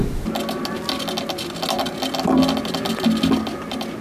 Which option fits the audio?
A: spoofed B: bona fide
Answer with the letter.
B